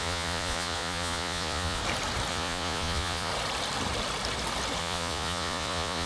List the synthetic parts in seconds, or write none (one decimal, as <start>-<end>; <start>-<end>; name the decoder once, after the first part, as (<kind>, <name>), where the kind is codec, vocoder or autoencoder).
0.0-1.8 (vocoder, Vocos); 2.3-3.3; 4.8-6.1